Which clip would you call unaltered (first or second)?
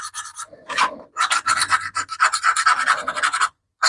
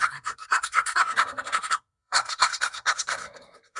first